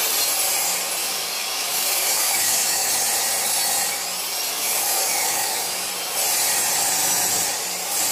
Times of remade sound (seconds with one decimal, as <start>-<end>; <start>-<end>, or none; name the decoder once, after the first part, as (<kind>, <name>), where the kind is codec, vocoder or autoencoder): 1.0-2.9 (codec, DAC); 4.5-5.9